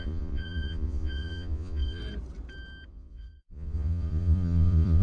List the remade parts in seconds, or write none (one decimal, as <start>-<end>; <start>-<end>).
0.0-2.0; 2.9-5.0